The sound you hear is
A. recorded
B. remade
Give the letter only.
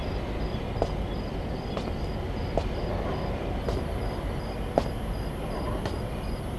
A